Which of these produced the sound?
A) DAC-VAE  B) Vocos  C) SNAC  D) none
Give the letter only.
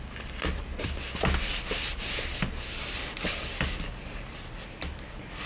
D